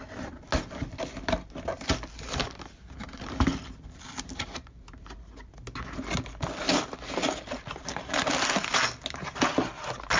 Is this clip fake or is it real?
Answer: real